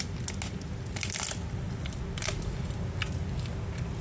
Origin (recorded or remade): recorded